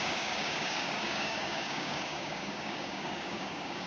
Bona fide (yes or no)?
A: no